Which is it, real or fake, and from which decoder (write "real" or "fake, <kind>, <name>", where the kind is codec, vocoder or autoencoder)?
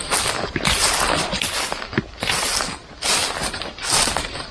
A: real